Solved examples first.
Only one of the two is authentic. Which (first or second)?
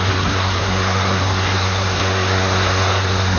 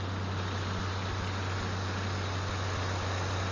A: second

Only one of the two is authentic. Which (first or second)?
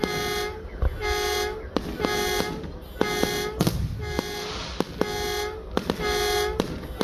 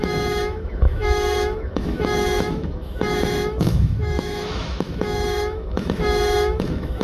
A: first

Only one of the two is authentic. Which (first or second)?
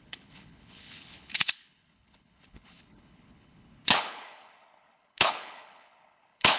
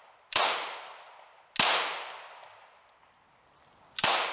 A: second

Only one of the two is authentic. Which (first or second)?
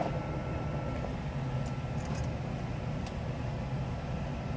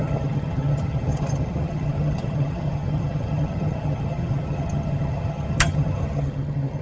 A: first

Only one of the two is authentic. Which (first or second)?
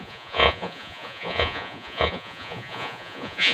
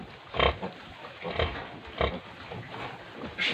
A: second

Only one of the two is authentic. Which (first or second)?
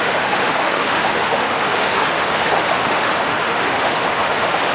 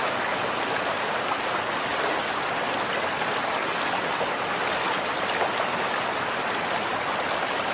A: second